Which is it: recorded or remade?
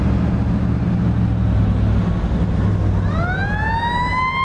recorded